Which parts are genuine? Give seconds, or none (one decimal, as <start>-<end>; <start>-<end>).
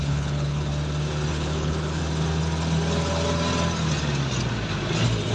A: 0.7-1.3; 2.0-5.3